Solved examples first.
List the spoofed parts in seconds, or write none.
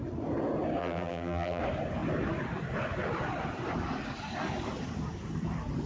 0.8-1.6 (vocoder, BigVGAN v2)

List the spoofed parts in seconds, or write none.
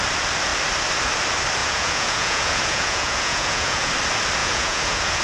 1.6-3.9 (vocoder, Vocos); 4.4-5.2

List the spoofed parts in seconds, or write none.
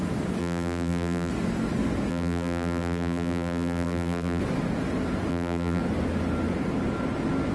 0.4-1.3 (vocoder, BigVGAN v2); 2.1-4.4; 5.3-5.8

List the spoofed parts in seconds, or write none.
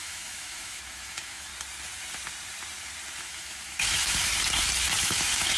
0.0-1.5 (autoencoder, DAC-VAE); 3.2-4.3; 5.0-5.6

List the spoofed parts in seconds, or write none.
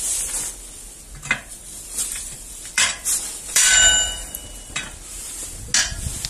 1.5-5.3 (vocoder, BigVGAN v2)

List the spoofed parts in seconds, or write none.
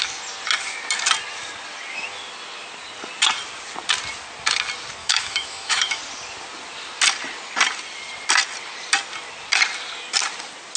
5.0-6.0 (autoencoder, DAC-VAE)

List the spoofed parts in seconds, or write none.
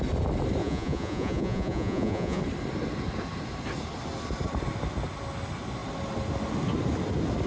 0.6-2.4 (vocoder, Vocos)